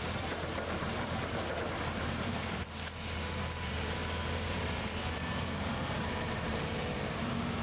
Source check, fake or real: fake